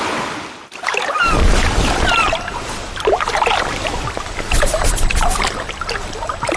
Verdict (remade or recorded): recorded